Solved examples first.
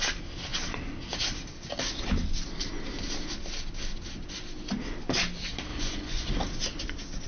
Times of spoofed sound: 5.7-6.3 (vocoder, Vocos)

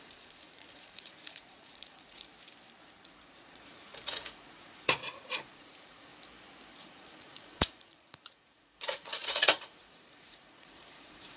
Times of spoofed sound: 0.0-2.3 (vocoder, Vocos); 2.8-6.1; 6.8-11.4